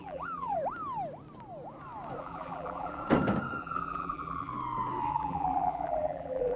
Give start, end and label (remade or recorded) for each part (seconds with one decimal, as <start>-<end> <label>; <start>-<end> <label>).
0.0-0.6 remade; 0.6-2.2 recorded; 2.2-3.0 remade; 3.0-3.6 recorded; 3.6-4.5 remade; 4.5-5.1 recorded; 5.1-6.6 remade